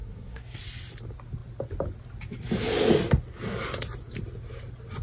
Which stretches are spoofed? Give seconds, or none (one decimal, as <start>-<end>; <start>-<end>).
0.0-0.6